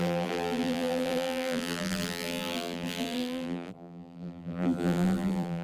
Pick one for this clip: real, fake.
fake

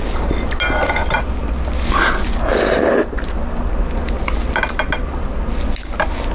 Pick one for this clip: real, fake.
real